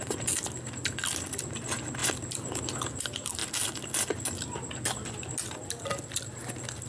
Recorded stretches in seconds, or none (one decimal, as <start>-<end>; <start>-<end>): 0.0-6.9